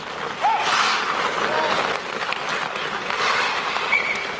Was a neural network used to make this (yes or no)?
no